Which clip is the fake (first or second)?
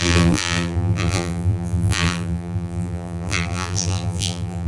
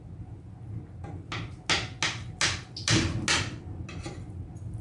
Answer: first